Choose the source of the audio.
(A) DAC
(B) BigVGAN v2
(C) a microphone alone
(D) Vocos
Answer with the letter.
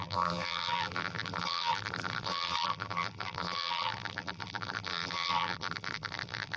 B